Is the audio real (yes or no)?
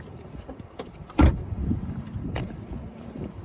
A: no